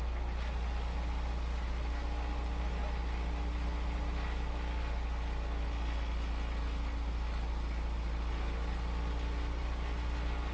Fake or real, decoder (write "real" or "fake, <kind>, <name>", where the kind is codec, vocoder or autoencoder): real